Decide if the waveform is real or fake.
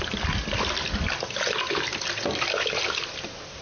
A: real